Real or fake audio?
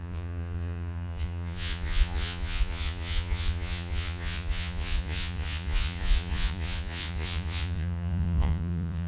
fake